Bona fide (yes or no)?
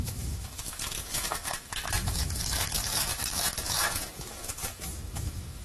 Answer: no